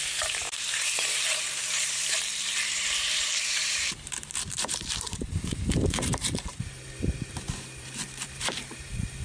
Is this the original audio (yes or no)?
no